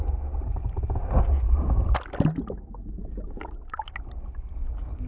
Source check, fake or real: real